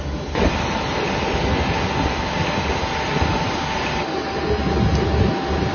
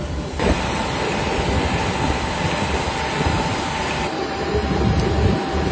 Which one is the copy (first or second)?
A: second